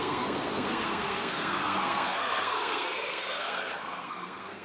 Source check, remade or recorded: remade